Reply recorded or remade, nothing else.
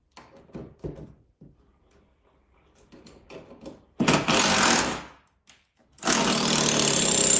recorded